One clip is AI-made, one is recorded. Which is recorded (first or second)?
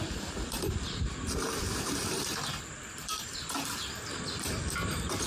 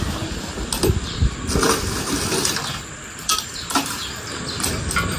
second